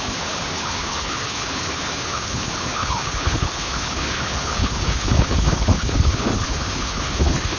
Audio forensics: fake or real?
fake